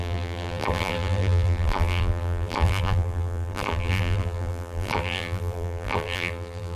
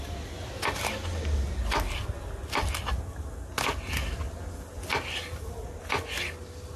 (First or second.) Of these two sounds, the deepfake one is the first